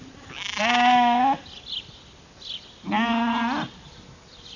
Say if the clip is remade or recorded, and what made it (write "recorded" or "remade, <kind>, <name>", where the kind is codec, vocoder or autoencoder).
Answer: recorded